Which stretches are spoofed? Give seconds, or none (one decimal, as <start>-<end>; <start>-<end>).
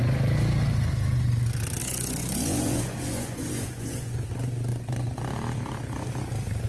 1.8-4.3; 4.7-5.2